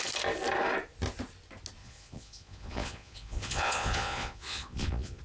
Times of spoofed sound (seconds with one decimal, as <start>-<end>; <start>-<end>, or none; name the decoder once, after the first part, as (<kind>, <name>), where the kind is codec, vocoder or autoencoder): 1.8-5.2 (vocoder, Vocos)